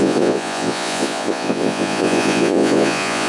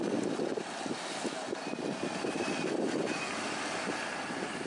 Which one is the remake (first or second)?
first